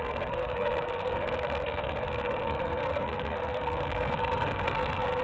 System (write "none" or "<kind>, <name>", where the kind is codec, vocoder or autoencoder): codec, SNAC